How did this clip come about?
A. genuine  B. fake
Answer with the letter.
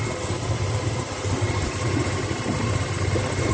A